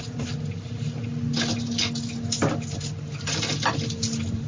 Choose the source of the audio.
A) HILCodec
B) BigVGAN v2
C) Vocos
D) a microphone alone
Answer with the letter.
D